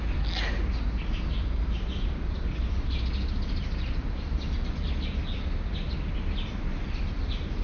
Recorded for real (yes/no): yes